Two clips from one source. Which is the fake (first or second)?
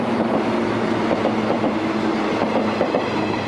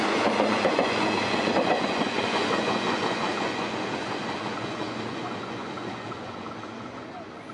second